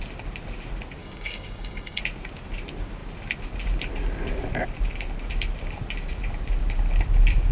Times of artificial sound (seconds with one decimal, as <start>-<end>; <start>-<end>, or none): 1.0-2.0